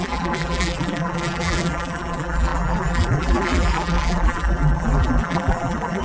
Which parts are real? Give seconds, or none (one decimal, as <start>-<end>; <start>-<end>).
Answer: none